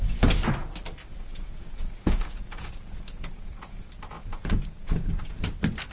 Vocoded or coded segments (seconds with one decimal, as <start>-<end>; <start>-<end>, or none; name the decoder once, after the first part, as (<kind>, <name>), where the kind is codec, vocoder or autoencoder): 1.1-3.9 (vocoder, Vocos); 4.3-5.4